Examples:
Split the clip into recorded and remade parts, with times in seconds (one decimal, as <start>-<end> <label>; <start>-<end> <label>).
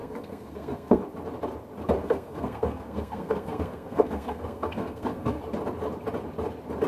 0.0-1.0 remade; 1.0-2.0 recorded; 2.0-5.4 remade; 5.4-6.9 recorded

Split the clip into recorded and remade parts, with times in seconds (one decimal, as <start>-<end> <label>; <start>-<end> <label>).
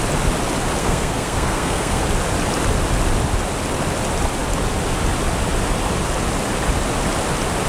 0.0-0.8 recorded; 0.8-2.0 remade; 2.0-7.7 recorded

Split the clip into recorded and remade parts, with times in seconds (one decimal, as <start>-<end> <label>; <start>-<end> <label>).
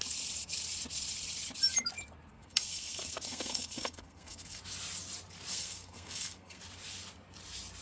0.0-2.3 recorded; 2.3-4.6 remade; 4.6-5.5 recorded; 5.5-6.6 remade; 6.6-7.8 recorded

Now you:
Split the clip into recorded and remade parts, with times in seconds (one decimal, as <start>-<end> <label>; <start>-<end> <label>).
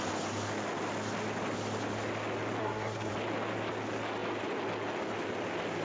0.0-2.6 recorded; 2.6-3.1 remade; 3.1-5.8 recorded